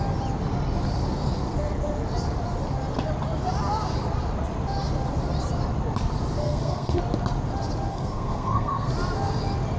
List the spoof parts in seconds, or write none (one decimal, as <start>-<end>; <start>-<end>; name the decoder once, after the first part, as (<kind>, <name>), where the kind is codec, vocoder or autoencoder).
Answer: 6.4-7.0 (codec, SNAC); 7.9-8.9